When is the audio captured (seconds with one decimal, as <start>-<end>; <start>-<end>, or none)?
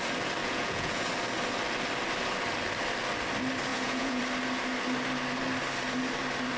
0.0-0.4; 1.1-3.7; 4.2-6.6